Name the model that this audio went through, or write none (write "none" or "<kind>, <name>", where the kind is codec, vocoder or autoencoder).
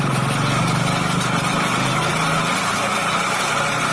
none